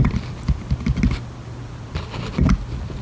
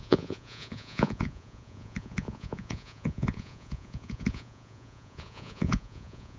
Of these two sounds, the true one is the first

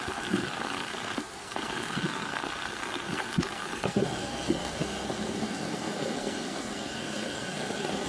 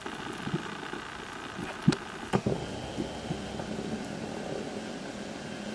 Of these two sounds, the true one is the second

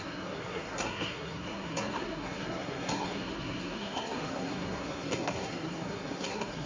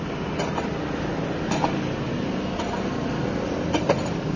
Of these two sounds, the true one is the second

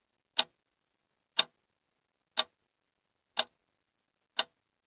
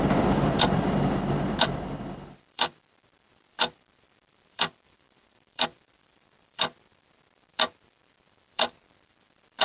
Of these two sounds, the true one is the first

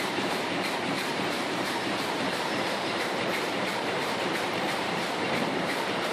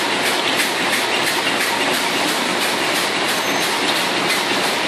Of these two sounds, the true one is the second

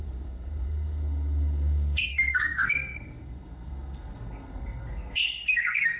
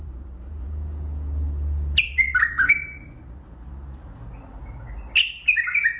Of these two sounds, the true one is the second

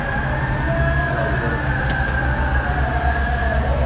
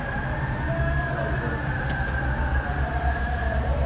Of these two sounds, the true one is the first